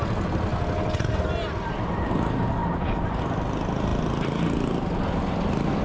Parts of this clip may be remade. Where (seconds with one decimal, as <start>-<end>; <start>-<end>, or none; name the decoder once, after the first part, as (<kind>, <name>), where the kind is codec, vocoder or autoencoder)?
none